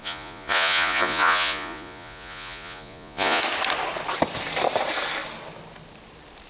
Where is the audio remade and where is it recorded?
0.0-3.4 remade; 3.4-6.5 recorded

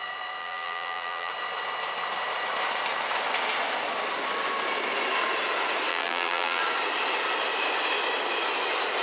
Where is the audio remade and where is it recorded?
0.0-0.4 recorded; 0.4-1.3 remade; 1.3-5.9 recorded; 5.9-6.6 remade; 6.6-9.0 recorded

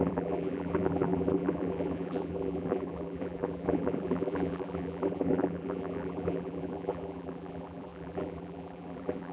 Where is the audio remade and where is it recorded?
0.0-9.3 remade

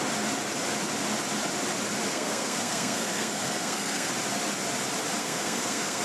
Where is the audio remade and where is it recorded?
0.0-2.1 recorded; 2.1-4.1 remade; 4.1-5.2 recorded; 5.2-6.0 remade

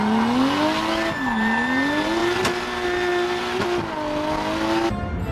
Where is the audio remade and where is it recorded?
0.0-5.3 recorded

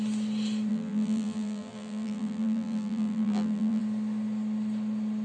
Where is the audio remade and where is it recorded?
0.0-0.7 recorded; 0.7-3.8 remade; 3.8-5.2 recorded

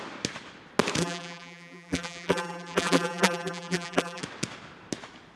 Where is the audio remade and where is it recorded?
0.0-1.0 recorded; 1.0-4.2 remade; 4.2-5.4 recorded

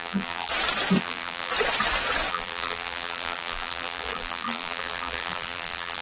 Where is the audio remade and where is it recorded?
0.0-0.5 remade; 0.5-1.0 recorded; 1.0-1.5 remade; 1.5-2.3 recorded; 2.3-6.0 remade